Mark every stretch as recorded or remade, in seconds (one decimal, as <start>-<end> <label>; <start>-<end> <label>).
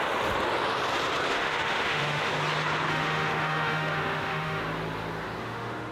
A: 0.0-1.3 recorded; 1.3-2.3 remade; 2.3-2.9 recorded; 2.9-4.6 remade; 4.6-5.4 recorded; 5.4-5.9 remade